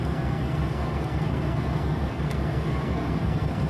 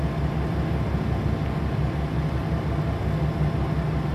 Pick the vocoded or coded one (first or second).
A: first